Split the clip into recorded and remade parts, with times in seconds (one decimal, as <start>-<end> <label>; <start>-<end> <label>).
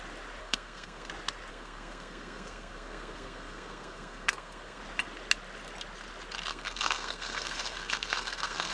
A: 0.0-0.4 recorded; 0.4-1.1 remade; 1.1-1.5 recorded; 1.5-4.8 remade; 4.8-6.5 recorded; 6.5-8.7 remade